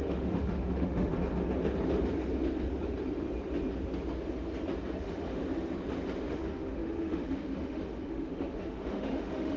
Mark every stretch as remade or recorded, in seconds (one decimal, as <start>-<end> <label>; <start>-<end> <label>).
0.0-1.1 remade; 1.1-5.0 recorded; 5.0-5.4 remade; 5.4-6.2 recorded; 6.2-9.6 remade